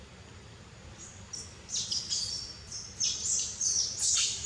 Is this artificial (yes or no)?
no